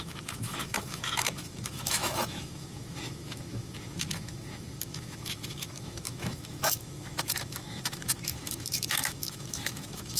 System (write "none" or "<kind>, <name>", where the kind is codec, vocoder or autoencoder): autoencoder, DAC-VAE